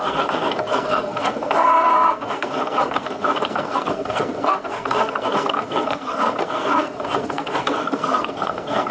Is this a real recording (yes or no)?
no